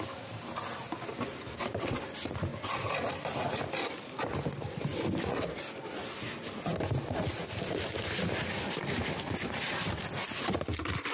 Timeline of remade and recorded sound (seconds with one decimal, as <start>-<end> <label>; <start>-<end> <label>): 0.0-11.1 recorded